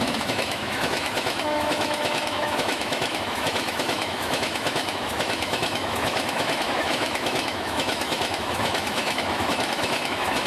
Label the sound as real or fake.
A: fake